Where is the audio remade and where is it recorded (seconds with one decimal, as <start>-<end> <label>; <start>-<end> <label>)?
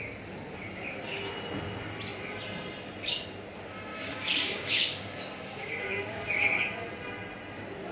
0.0-3.9 recorded; 3.9-6.6 remade; 6.6-7.9 recorded